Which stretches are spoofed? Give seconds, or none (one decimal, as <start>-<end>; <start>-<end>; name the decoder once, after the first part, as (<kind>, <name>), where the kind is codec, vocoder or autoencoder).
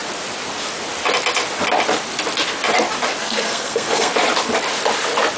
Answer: 3.2-4.1 (codec, SNAC)